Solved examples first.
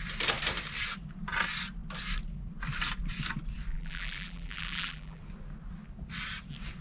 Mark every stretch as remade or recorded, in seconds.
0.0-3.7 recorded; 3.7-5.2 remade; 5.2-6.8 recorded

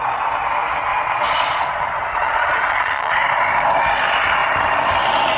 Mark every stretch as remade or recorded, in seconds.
0.0-0.9 recorded; 0.9-3.1 remade; 3.1-5.4 recorded

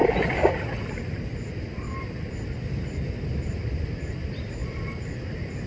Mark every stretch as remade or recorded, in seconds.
0.0-5.7 recorded

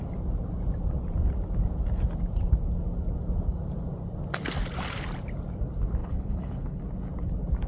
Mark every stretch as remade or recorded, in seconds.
0.0-6.0 recorded; 6.0-6.8 remade; 6.8-7.7 recorded

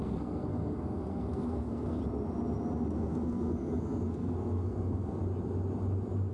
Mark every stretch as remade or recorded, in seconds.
0.0-2.0 remade; 2.0-2.9 recorded; 2.9-5.2 remade; 5.2-6.3 recorded